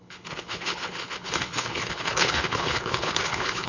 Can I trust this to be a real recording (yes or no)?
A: no